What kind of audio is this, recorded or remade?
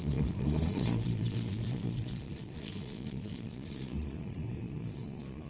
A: remade